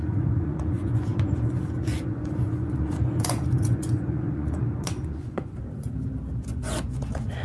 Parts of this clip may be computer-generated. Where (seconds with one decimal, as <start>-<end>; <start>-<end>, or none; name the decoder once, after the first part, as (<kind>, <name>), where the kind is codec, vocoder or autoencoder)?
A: 0.0-5.6 (vocoder, Vocos); 6.5-7.4